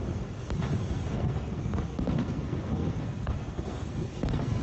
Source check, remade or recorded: remade